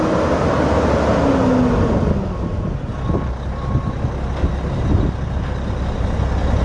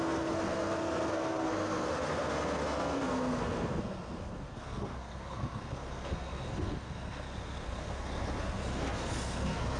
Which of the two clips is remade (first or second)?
second